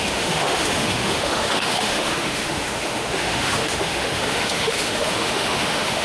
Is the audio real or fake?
fake